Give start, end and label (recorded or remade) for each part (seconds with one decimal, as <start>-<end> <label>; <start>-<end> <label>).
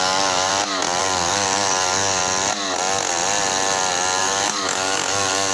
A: 0.0-0.5 remade; 0.5-1.0 recorded; 1.0-2.2 remade; 2.2-4.2 recorded; 4.2-5.5 remade